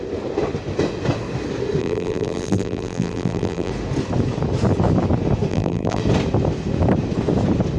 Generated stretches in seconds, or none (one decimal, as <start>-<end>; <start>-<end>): 1.8-3.7; 5.5-6.0

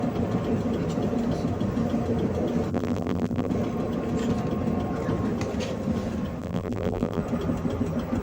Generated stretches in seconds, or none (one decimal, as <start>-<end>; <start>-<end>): 2.7-3.5; 6.4-7.2

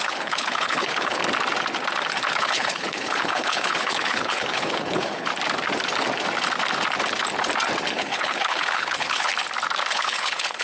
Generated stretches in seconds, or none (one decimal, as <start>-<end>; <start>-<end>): 0.0-1.2; 2.3-5.3; 7.9-9.3; 9.9-10.6

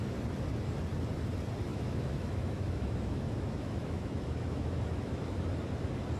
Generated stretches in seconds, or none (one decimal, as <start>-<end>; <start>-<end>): 1.7-5.4

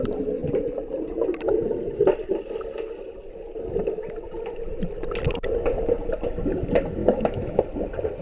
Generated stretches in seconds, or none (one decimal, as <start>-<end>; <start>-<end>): 7.0-7.6